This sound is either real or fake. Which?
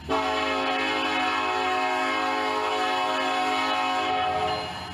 real